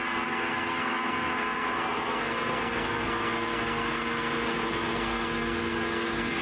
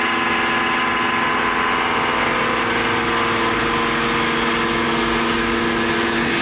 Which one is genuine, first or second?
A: second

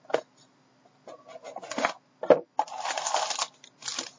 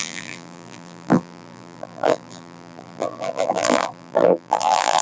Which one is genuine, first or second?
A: first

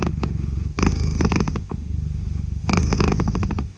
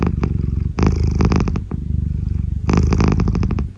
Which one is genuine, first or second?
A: second